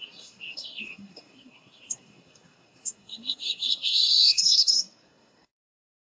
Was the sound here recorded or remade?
remade